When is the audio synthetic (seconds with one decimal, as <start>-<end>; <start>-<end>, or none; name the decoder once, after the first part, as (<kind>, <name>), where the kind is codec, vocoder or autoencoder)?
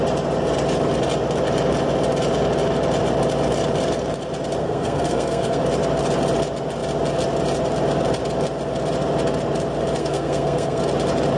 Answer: 4.6-5.6 (codec, SNAC); 10.0-10.8